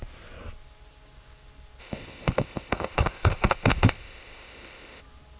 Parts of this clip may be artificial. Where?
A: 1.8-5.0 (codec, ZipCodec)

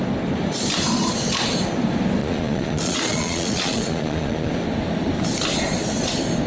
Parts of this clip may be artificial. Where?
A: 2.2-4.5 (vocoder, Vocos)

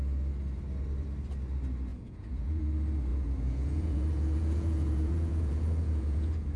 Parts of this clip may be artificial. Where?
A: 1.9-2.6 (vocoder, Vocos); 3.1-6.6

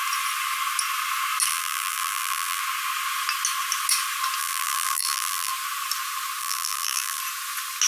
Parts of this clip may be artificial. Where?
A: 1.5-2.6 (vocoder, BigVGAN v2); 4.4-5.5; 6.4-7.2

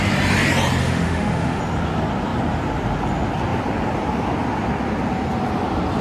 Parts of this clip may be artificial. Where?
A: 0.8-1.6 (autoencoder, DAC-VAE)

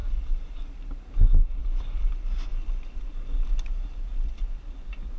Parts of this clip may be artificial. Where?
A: 0.0-0.7 (vocoder, BigVGAN v2); 1.6-2.1

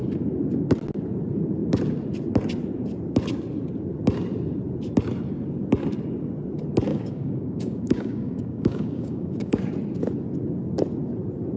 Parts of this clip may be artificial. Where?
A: 6.9-9.6 (codec, DAC)